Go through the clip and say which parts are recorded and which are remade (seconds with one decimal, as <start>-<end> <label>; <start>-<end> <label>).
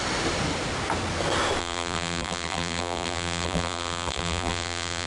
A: 0.0-1.6 recorded; 1.6-5.1 remade